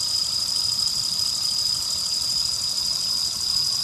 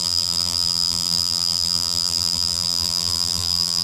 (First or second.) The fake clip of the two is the second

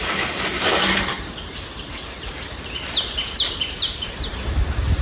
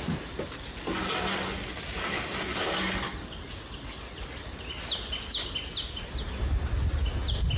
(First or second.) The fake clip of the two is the first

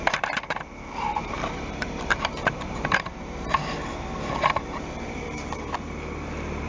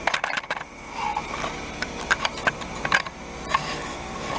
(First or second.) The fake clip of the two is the first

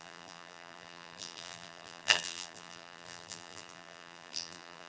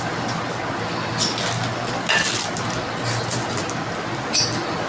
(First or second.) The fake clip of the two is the first